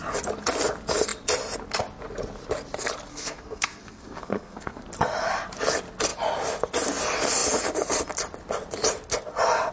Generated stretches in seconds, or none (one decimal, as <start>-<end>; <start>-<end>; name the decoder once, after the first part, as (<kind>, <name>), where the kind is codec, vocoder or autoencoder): 3.1-4.8 (codec, SNAC)